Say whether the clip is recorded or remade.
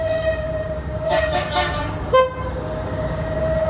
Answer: remade